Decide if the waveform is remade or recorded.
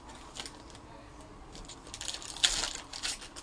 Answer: recorded